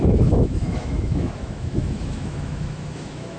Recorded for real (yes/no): no